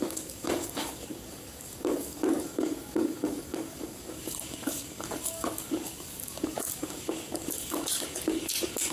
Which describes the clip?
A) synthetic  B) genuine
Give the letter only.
A